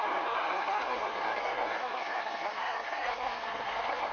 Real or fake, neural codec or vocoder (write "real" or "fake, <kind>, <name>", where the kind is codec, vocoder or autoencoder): fake, codec, SNAC